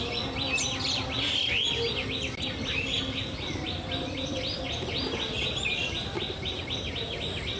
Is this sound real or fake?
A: real